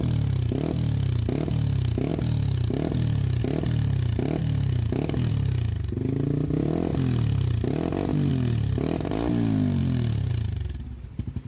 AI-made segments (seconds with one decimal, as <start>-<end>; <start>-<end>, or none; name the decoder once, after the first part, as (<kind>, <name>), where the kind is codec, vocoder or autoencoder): 4.4-5.3 (autoencoder, DAC-VAE)

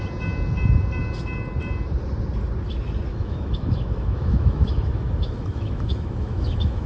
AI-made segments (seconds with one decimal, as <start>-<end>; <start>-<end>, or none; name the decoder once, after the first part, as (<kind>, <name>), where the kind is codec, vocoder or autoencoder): 3.1-6.9 (autoencoder, DAC-VAE)

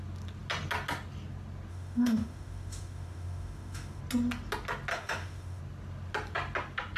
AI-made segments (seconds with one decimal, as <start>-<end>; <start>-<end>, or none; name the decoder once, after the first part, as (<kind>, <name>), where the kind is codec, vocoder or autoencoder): 1.7-4.0 (autoencoder, DAC-VAE); 4.9-5.6

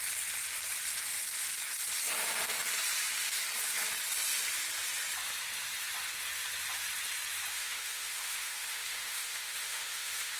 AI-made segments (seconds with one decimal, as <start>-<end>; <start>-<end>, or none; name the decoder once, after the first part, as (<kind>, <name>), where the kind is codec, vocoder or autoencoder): 7.5-10.4 (autoencoder, DAC-VAE)